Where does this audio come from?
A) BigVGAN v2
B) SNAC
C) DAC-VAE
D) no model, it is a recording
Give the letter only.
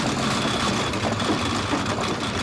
D